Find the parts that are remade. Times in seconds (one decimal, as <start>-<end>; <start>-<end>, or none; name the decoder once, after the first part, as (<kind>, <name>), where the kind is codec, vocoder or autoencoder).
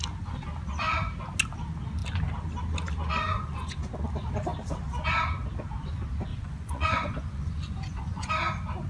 3.3-3.8 (vocoder, Vocos); 6.3-8.3